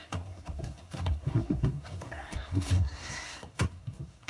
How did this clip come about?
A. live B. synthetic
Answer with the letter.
B